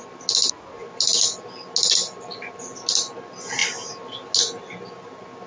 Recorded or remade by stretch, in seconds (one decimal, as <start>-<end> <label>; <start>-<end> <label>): 0.0-5.5 recorded